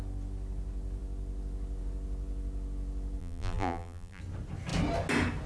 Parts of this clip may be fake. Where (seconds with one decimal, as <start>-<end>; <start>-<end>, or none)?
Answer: 3.2-4.2